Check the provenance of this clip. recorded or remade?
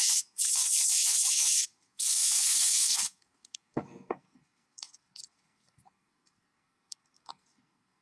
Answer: remade